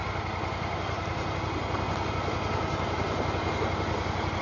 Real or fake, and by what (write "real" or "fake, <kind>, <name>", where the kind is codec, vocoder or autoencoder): real